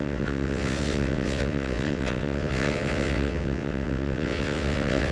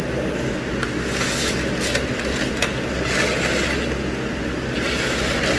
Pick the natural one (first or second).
second